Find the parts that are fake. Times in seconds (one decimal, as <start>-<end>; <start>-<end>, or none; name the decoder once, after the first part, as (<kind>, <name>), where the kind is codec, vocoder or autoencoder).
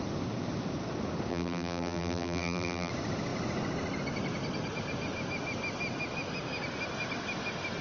1.3-2.9 (vocoder, BigVGAN v2)